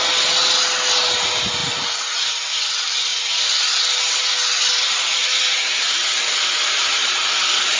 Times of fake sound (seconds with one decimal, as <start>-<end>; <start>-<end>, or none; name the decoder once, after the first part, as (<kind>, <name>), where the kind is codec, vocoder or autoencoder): none